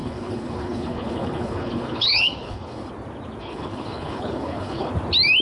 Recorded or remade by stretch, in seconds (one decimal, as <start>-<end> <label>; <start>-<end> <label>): 0.0-2.9 remade; 2.9-3.4 recorded; 3.4-4.9 remade; 4.9-5.4 recorded